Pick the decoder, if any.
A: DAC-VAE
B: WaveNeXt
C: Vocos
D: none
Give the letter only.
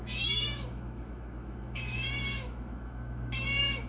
A